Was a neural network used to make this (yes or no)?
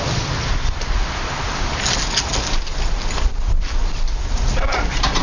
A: no